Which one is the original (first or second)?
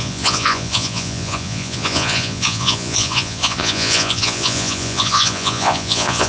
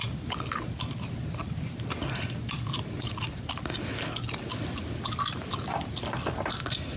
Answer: second